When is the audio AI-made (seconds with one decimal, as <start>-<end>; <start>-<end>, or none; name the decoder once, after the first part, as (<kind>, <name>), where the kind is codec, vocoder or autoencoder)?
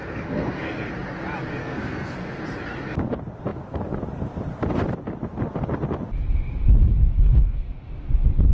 0.0-0.9 (codec, SNAC); 1.6-2.4; 7.0-7.9